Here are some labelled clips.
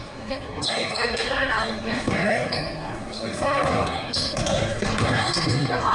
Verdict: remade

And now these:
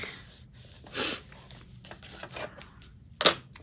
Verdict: recorded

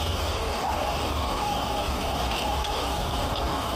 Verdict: remade